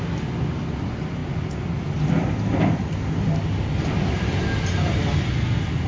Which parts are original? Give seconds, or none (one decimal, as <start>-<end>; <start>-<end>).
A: 0.0-5.9